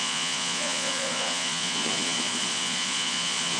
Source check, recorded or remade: remade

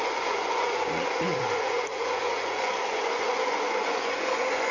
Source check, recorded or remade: remade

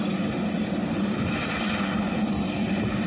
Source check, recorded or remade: recorded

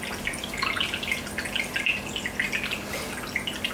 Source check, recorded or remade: recorded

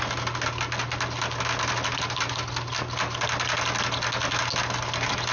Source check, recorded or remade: recorded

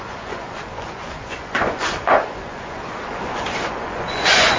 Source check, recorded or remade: remade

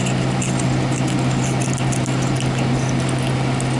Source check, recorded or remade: recorded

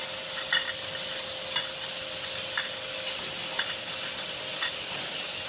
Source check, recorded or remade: recorded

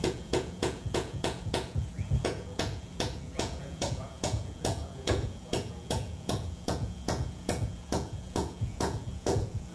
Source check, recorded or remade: remade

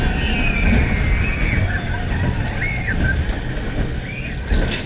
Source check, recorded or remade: recorded